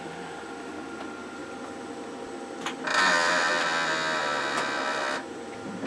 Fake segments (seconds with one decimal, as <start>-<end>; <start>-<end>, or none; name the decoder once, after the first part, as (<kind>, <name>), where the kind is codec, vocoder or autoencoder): none